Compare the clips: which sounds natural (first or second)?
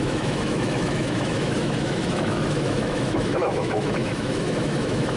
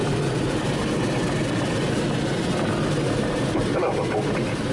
second